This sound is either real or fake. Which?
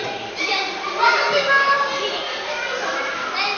real